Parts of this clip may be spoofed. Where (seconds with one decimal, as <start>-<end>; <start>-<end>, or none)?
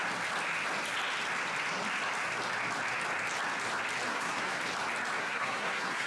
4.1-4.6; 5.2-6.1